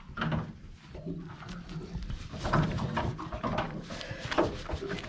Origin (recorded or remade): recorded